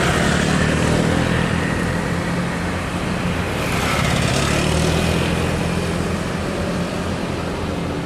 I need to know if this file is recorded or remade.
recorded